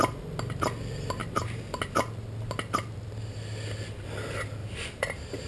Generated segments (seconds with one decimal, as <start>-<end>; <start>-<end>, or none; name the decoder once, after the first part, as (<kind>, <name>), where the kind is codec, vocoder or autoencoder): 1.2-1.8 (vocoder, BigVGAN v2); 4.6-5.5